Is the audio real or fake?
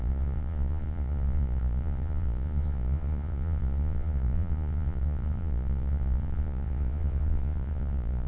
fake